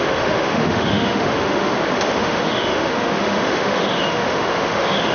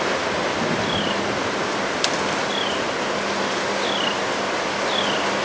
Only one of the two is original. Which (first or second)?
second